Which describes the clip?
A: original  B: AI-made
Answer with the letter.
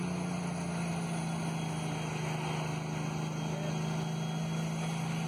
A